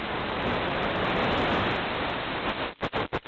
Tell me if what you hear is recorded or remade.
recorded